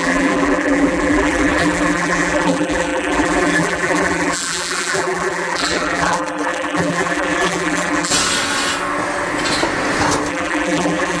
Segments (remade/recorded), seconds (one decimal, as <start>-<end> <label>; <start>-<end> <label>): 0.0-8.1 remade; 8.1-10.3 recorded; 10.3-11.2 remade